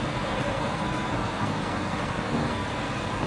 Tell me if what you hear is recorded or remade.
remade